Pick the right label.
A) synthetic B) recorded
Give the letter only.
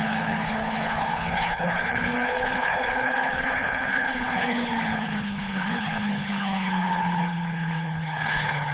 A